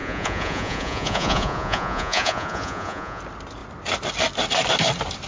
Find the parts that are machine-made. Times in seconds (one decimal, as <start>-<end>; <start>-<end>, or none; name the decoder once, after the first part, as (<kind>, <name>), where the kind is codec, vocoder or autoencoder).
0.0-3.2 (vocoder, Vocos)